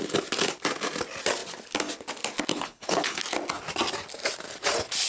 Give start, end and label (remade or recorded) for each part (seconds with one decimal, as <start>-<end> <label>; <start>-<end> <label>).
0.0-2.5 recorded; 2.5-3.2 remade; 3.2-5.1 recorded

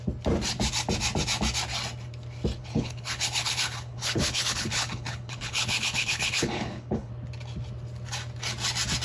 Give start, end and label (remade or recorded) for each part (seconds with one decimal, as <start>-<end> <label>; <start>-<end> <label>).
0.0-2.6 recorded; 2.6-7.1 remade; 7.1-9.0 recorded

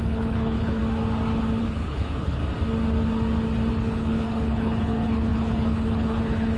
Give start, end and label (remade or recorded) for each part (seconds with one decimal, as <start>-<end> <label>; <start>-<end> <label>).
0.0-0.8 remade; 0.8-1.6 recorded; 1.6-2.4 remade; 2.4-3.7 recorded; 3.7-6.6 remade

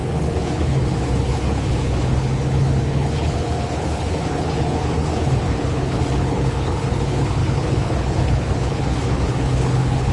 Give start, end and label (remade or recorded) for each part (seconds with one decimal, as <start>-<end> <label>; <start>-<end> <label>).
0.0-10.1 remade

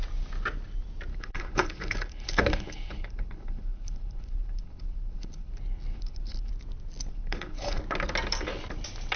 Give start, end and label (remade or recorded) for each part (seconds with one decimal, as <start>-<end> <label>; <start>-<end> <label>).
0.0-1.1 recorded; 1.1-5.5 remade; 5.5-5.9 recorded; 5.9-6.5 remade; 6.5-7.1 recorded; 7.1-7.8 remade; 7.8-9.2 recorded

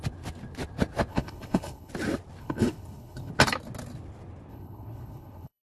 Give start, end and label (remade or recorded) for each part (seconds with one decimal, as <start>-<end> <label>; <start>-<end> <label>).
0.0-1.1 recorded; 1.1-1.9 remade; 1.9-2.4 recorded; 2.4-3.3 remade; 3.3-4.5 recorded; 4.5-5.6 remade

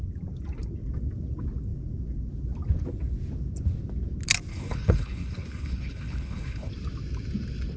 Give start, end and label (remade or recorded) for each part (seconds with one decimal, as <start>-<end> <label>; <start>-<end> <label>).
0.0-4.5 recorded; 4.5-6.7 remade; 6.7-7.8 recorded

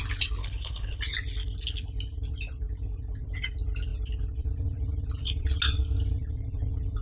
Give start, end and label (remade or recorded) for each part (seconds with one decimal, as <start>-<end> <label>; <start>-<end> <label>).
0.0-0.4 recorded; 0.4-1.0 remade; 1.0-7.0 recorded